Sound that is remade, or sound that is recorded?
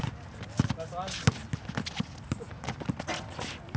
recorded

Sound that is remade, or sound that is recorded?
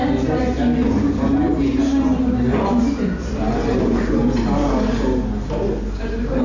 recorded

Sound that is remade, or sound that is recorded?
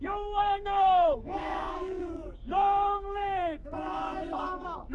remade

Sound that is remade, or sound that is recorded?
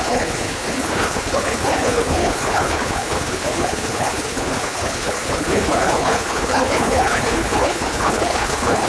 remade